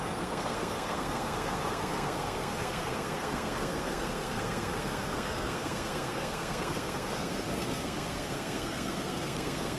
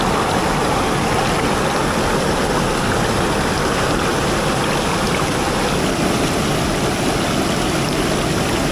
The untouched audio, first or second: second